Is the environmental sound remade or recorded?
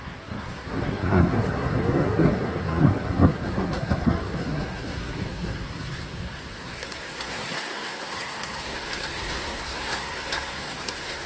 remade